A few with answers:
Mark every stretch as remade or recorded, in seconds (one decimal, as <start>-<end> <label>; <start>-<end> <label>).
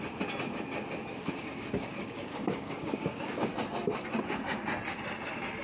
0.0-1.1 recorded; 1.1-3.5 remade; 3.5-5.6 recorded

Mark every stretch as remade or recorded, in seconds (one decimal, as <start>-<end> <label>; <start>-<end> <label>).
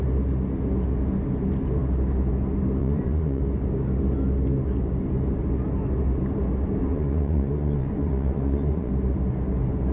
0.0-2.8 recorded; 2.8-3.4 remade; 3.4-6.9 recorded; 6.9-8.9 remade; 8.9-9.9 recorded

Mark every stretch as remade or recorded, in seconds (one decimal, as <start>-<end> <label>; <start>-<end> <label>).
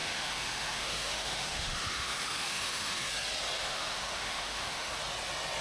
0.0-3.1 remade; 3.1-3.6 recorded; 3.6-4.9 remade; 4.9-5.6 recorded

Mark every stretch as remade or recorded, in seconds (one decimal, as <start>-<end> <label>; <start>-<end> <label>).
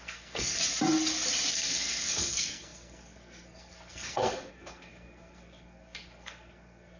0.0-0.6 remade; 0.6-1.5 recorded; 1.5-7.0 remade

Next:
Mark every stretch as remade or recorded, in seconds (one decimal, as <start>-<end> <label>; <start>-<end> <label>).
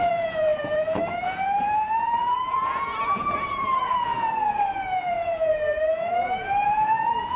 0.0-7.4 remade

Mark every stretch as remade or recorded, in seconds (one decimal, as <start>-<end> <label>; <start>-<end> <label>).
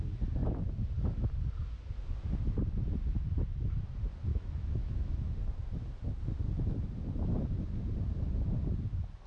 0.0-4.3 recorded; 4.3-5.1 remade; 5.1-9.3 recorded